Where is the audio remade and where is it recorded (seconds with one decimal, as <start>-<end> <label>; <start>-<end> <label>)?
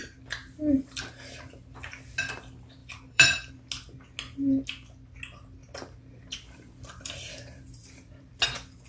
0.0-2.8 recorded; 2.8-3.5 remade; 3.5-5.6 recorded; 5.6-8.3 remade; 8.3-8.9 recorded